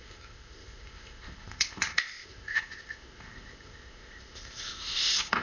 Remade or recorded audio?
remade